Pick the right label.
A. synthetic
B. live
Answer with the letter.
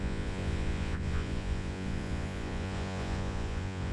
A